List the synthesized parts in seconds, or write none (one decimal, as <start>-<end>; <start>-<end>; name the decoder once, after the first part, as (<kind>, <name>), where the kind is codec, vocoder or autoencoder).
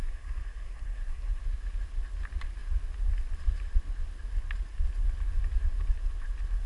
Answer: 0.0-1.4 (codec, SNAC)